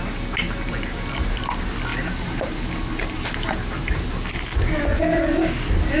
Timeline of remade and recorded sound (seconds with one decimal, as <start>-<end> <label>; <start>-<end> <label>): 0.0-1.9 recorded; 1.9-4.1 remade; 4.1-6.0 recorded